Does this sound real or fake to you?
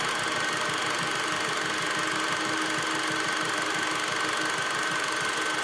real